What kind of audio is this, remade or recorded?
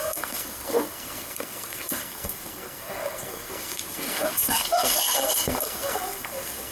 remade